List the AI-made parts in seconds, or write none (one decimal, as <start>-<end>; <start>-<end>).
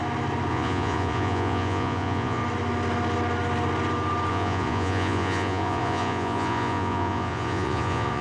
0.5-2.4; 4.3-8.2